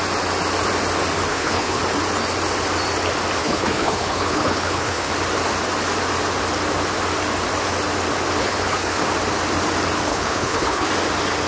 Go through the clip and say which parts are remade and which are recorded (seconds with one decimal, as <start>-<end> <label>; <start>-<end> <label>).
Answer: 0.0-1.3 recorded; 1.3-1.8 remade; 1.8-3.4 recorded; 3.4-5.1 remade; 5.1-8.4 recorded; 8.4-9.0 remade; 9.0-10.1 recorded; 10.1-10.9 remade; 10.9-11.5 recorded